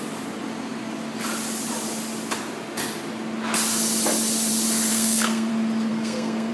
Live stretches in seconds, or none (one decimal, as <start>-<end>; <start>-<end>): 0.0-4.9; 5.5-5.9